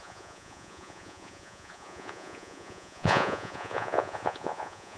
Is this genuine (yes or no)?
no